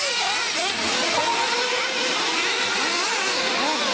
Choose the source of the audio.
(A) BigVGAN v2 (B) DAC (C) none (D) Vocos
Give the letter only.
C